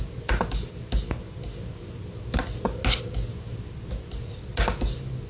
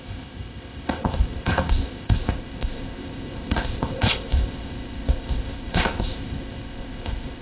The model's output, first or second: second